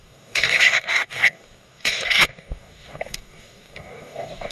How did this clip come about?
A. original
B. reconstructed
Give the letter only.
B